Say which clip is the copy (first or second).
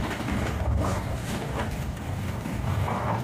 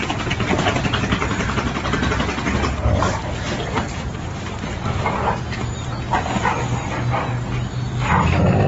first